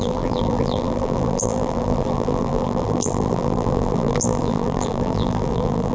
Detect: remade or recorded remade